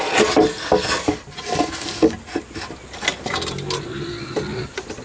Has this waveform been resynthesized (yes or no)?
no